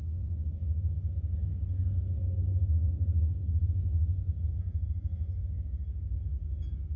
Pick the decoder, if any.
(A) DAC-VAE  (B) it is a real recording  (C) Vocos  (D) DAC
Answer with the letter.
D